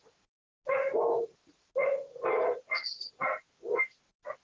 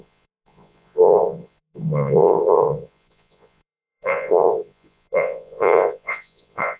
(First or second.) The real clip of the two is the first